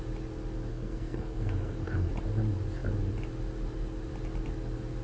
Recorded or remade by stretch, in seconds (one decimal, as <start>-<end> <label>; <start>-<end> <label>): 0.0-0.7 recorded; 0.7-2.1 remade; 2.1-5.0 recorded